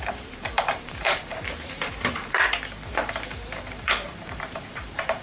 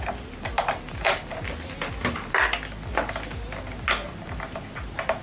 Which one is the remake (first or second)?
first